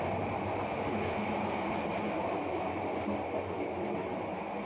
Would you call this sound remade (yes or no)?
no